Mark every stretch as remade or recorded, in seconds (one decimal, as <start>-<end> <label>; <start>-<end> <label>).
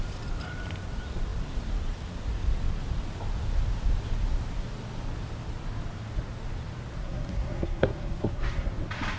0.0-7.0 recorded; 7.0-8.7 remade; 8.7-9.2 recorded